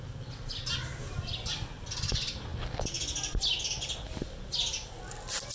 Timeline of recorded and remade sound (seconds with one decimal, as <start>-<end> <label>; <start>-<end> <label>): 0.0-5.5 recorded